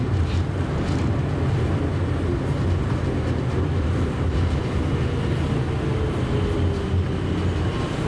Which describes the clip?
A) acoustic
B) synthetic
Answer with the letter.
A